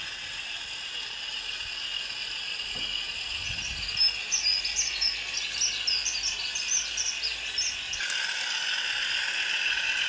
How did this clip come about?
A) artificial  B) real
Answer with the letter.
B